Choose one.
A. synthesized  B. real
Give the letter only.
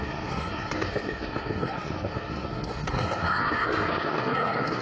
A